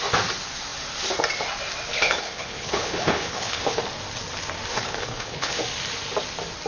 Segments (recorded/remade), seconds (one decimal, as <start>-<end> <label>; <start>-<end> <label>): 0.0-1.9 recorded; 1.9-3.8 remade; 3.8-4.7 recorded; 4.7-5.6 remade; 5.6-6.7 recorded